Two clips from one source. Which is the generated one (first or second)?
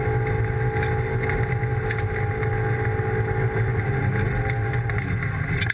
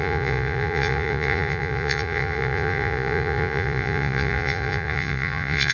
second